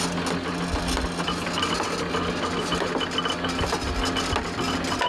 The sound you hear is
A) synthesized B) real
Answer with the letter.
B